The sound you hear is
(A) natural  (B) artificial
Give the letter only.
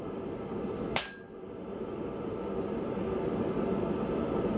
B